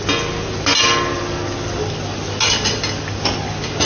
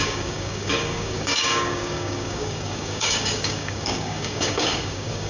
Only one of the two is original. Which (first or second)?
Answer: first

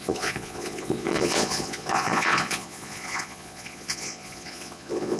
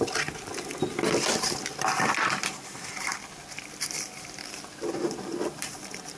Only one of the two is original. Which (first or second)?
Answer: second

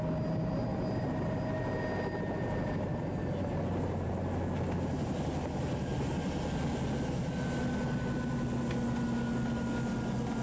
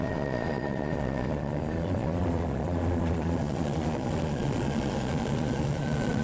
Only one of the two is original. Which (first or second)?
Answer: first